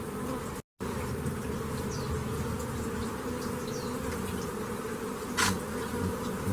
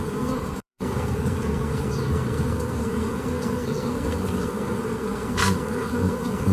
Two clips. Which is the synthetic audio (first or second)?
second